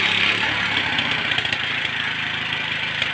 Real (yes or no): no